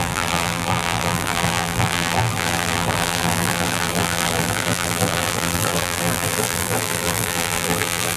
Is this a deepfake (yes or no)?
yes